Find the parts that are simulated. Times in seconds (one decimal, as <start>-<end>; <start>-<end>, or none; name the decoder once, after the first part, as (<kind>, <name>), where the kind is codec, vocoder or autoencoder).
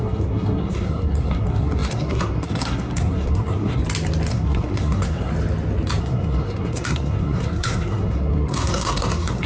0.0-3.8 (codec, SNAC); 4.3-5.3; 6.0-9.5